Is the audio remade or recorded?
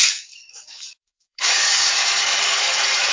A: remade